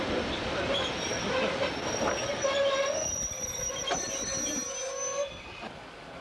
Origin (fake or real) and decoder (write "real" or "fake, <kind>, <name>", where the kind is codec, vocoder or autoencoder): real